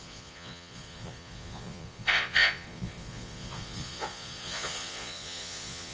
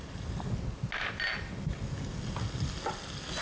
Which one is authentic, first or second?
second